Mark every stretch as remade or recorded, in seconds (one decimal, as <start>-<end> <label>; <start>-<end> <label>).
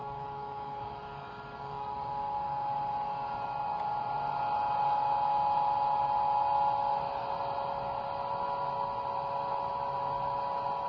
0.0-1.9 remade; 1.9-10.9 recorded